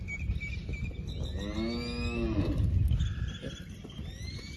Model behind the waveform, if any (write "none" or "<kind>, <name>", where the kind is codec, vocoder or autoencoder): none